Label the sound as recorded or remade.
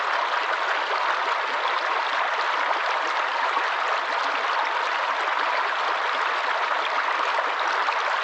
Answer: recorded